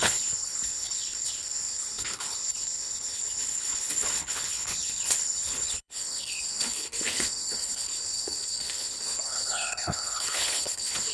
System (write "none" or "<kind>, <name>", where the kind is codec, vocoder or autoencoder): codec, HILCodec